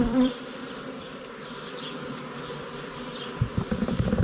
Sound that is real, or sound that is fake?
fake